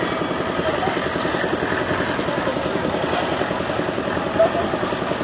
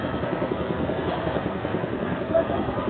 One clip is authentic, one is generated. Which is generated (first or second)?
second